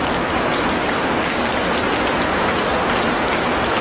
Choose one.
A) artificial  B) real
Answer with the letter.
B